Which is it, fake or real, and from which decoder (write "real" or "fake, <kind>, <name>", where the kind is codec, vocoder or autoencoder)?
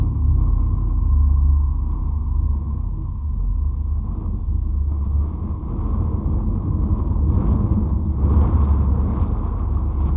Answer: real